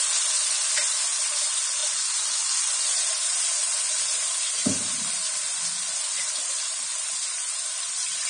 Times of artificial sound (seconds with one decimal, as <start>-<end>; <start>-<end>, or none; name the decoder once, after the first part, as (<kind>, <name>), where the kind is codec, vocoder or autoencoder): none